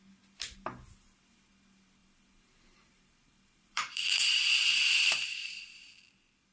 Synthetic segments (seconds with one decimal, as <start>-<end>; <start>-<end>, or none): 2.0-5.9